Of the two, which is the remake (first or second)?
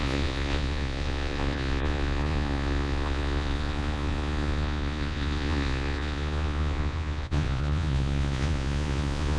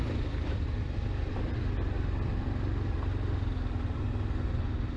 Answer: first